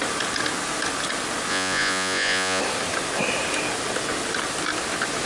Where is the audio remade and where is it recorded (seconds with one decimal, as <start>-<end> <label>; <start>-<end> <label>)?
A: 0.0-1.5 recorded; 1.5-2.6 remade; 2.6-5.3 recorded